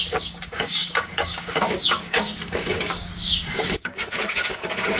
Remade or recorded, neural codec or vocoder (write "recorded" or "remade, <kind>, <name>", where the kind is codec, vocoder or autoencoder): remade, codec, DAC